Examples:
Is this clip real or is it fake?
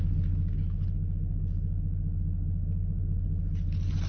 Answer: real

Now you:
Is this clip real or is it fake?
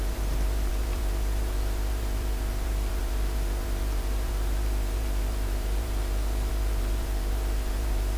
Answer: fake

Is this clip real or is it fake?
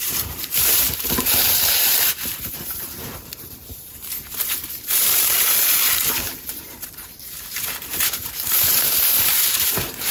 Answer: fake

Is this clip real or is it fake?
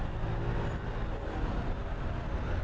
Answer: real